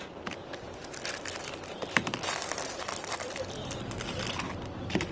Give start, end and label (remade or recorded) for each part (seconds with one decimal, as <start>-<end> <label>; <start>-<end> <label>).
0.0-5.1 recorded